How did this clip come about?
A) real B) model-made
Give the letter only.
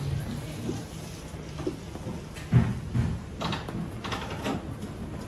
A